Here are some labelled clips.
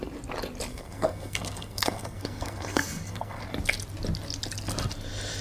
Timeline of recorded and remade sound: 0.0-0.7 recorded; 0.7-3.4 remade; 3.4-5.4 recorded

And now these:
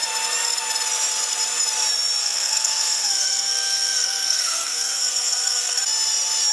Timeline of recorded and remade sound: 0.0-2.2 recorded; 2.2-5.8 remade; 5.8-6.5 recorded

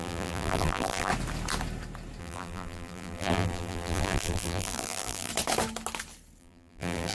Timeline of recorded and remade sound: 0.0-1.1 remade; 1.1-2.2 recorded; 2.2-5.3 remade; 5.3-6.4 recorded; 6.4-7.1 remade

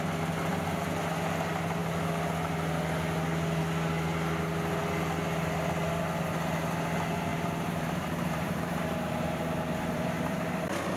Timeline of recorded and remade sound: 0.0-7.3 recorded; 7.3-10.6 remade; 10.6-11.0 recorded

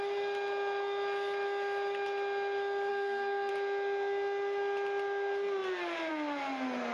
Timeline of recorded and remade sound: 0.0-2.9 recorded; 2.9-3.5 remade; 3.5-6.9 recorded

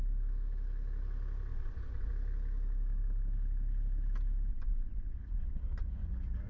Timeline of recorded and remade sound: 0.0-1.5 recorded; 1.5-2.1 remade; 2.1-4.5 recorded; 4.5-6.1 remade; 6.1-6.5 recorded

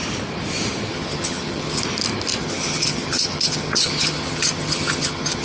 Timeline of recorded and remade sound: 0.0-0.9 recorded; 0.9-1.8 remade; 1.8-2.4 recorded; 2.4-5.4 remade

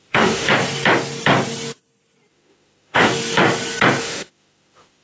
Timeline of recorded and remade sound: 0.0-0.5 remade; 0.5-2.3 recorded; 2.3-3.1 remade; 3.1-4.0 recorded; 4.0-5.0 remade